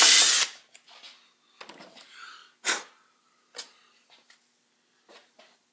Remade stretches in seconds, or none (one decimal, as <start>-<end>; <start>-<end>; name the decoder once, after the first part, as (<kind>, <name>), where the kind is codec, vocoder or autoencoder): none